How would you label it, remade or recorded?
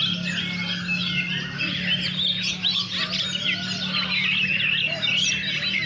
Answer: recorded